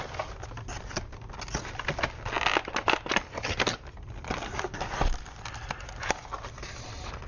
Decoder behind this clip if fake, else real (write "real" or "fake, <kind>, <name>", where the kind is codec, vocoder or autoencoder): real